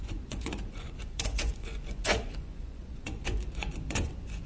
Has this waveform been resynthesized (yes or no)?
yes